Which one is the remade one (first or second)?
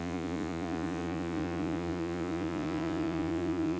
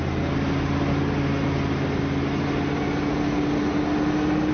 first